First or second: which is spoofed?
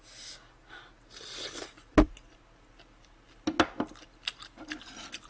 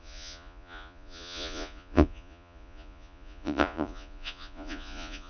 second